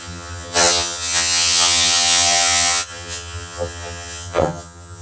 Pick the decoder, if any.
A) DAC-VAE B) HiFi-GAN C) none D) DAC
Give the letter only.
B